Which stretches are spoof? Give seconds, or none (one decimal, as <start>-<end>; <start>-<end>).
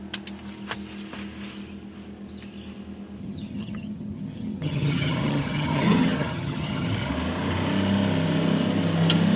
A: 3.2-6.9